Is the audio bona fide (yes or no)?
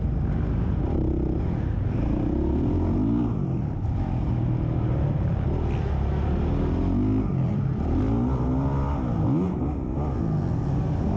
yes